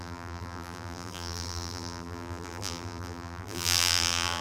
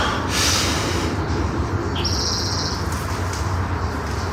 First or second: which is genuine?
second